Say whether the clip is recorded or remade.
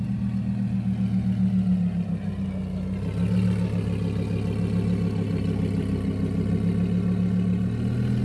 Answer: recorded